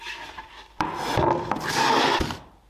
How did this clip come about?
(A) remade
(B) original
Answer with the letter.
B